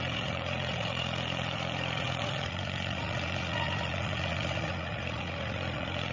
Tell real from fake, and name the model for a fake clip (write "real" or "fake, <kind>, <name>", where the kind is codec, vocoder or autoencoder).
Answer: fake, vocoder, Vocos